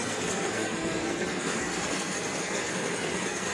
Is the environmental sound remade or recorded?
remade